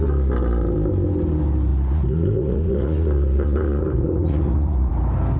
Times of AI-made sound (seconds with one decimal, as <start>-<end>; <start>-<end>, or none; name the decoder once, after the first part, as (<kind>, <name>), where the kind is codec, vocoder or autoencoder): 1.7-4.9 (vocoder, Vocos)